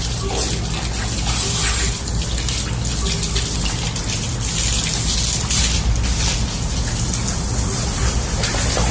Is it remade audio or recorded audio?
recorded